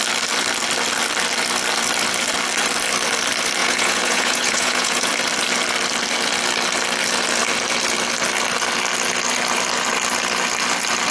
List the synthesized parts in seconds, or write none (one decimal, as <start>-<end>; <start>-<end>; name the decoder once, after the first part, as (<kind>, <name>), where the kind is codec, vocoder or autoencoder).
3.6-5.1 (vocoder, Vocos)